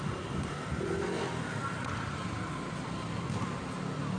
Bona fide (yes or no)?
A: yes